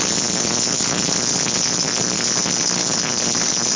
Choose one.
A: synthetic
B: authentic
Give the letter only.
B